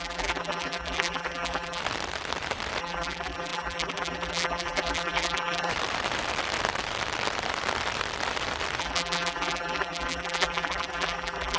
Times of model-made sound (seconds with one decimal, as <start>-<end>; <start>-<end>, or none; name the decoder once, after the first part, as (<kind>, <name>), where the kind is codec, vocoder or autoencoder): 0.0-1.8 (vocoder, BigVGAN v2); 2.8-5.7; 8.8-11.6